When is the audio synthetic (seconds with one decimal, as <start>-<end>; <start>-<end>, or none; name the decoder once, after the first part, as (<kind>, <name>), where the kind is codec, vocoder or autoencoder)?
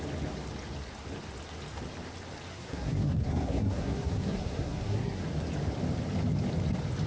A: 2.5-5.2 (codec, SNAC)